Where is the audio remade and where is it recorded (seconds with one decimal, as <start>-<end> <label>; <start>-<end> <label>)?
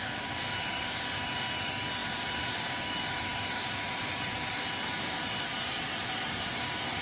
0.0-7.0 recorded